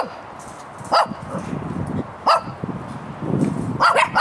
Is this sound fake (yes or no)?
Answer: no